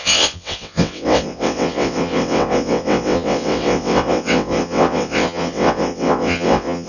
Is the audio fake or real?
fake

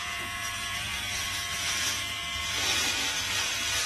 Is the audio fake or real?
fake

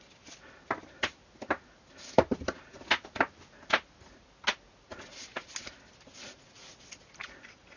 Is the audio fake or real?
real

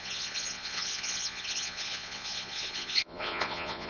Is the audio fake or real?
fake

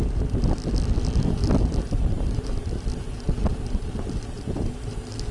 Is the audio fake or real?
real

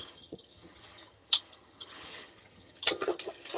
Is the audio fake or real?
fake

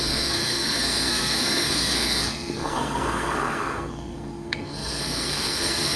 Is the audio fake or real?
fake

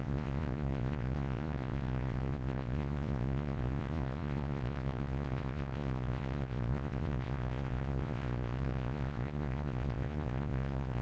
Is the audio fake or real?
fake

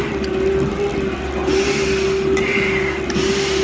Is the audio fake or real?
real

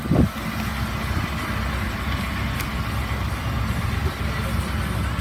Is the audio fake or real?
real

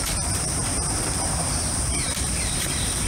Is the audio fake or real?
fake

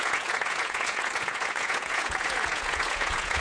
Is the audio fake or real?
fake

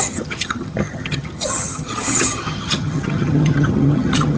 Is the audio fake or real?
fake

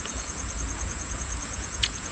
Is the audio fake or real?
fake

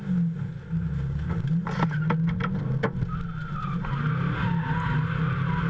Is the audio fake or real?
real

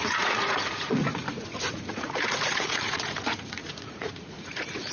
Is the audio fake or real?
fake